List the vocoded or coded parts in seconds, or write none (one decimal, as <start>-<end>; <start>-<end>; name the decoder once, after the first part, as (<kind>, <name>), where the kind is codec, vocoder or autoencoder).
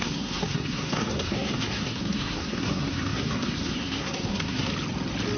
0.0-4.7 (codec, SNAC)